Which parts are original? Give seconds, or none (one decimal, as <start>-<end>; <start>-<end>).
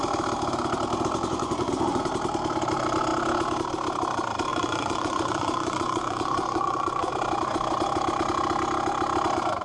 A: 0.0-1.3; 2.1-4.5; 7.1-9.6